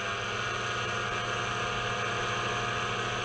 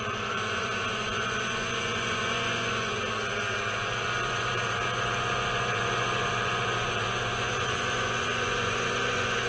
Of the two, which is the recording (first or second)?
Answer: first